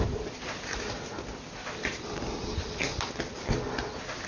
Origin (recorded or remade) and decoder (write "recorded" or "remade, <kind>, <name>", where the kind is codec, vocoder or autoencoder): recorded